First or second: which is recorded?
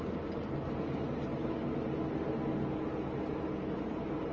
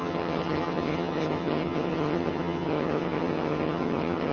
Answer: first